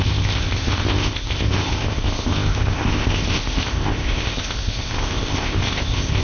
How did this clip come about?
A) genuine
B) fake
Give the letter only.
B